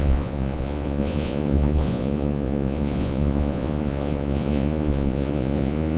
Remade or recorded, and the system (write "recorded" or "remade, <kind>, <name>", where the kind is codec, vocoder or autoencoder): remade, vocoder, Vocos